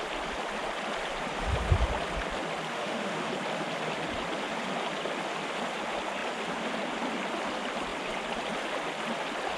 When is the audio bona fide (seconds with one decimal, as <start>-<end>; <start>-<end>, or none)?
0.0-2.7; 3.3-9.6